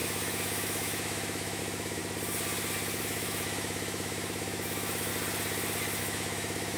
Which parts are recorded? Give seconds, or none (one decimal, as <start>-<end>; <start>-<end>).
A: 2.0-3.0; 5.1-6.0